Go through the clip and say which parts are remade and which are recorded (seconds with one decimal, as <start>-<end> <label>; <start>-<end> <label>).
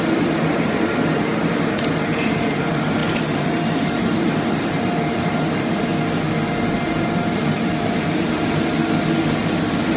0.0-5.9 remade; 5.9-6.5 recorded; 6.5-8.8 remade; 8.8-9.5 recorded; 9.5-10.0 remade